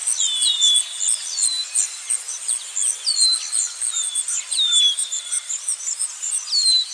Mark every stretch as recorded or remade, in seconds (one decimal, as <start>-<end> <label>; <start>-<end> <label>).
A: 0.0-3.9 recorded; 3.9-6.9 remade